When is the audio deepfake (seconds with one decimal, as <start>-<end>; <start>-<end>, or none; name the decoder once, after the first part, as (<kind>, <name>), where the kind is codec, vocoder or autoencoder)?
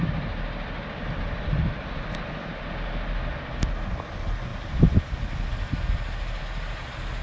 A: none